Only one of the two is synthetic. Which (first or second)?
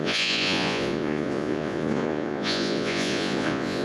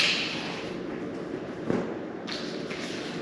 first